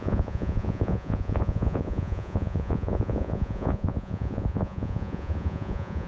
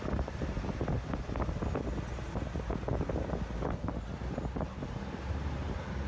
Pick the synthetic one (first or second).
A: first